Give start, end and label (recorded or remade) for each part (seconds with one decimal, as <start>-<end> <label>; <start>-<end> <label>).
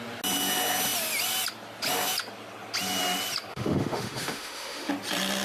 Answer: 0.0-3.5 recorded; 3.5-4.9 remade; 4.9-5.4 recorded